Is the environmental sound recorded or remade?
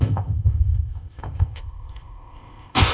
remade